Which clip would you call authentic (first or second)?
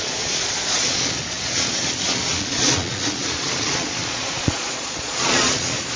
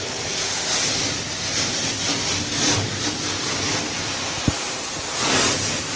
second